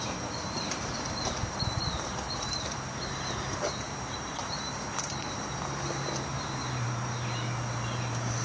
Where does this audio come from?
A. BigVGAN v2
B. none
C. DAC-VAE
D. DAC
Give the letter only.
A